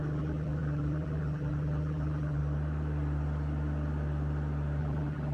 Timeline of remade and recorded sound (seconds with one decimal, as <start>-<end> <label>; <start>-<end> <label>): 0.0-2.4 remade; 2.4-4.8 recorded; 4.8-5.3 remade